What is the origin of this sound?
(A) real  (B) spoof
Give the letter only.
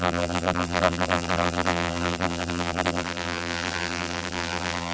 B